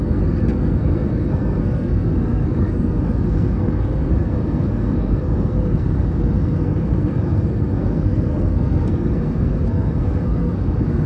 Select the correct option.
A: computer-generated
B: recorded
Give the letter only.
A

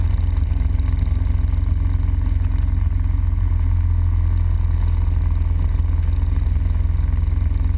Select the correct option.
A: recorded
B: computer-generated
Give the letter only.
A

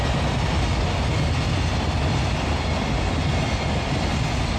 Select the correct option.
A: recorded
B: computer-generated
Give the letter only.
A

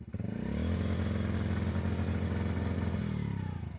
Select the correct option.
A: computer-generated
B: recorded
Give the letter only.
B